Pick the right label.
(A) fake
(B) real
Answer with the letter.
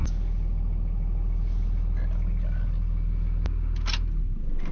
B